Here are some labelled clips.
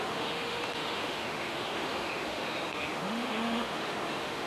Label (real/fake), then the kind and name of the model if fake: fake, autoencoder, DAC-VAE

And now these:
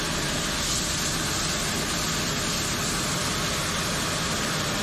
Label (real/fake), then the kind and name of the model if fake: real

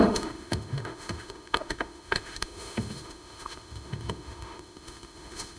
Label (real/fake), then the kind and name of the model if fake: fake, autoencoder, DAC-VAE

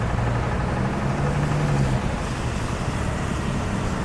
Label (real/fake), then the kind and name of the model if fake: real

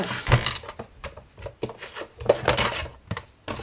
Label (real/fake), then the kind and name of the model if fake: real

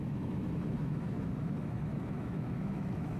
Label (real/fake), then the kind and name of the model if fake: fake, autoencoder, DAC-VAE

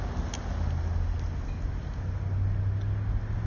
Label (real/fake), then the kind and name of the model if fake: real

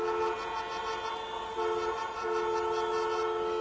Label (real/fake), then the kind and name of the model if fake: real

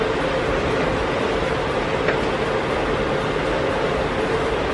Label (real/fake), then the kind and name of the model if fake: real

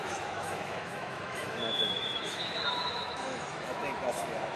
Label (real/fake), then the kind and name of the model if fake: fake, autoencoder, DAC-VAE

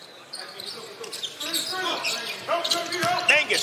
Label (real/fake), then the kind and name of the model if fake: real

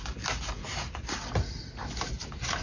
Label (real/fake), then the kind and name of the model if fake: real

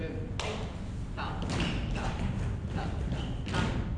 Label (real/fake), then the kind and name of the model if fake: real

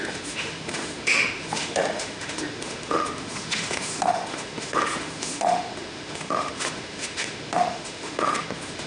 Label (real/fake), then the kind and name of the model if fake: fake, autoencoder, DAC-VAE